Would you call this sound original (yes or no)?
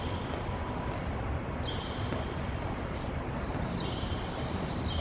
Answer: yes